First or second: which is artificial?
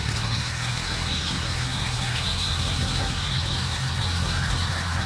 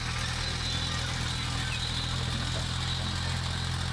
first